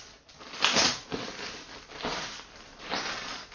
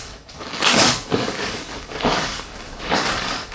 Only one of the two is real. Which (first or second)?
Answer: first